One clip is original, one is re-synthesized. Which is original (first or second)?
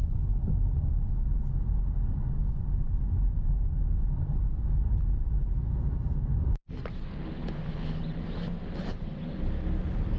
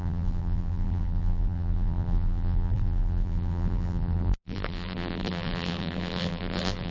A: first